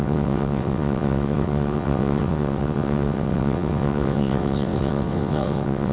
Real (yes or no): no